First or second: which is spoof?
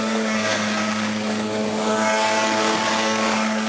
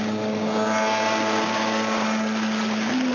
first